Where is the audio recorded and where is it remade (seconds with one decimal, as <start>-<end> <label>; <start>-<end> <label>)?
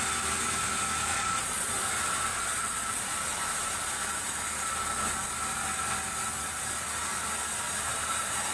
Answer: 0.0-1.1 recorded; 1.1-1.9 remade; 1.9-2.3 recorded; 2.3-3.0 remade; 3.0-8.5 recorded